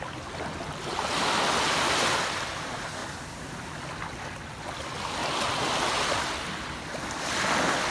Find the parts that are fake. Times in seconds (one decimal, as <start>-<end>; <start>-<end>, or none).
none